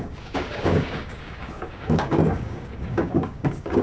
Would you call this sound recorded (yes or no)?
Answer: no